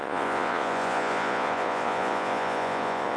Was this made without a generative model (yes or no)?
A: no